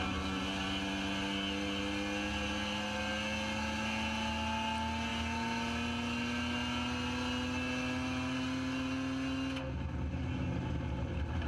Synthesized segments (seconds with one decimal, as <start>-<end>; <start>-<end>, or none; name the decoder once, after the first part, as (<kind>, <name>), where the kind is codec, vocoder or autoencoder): none